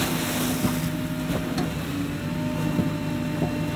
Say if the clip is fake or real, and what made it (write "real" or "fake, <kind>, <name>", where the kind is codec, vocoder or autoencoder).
real